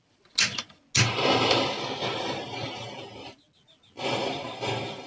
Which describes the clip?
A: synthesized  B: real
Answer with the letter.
B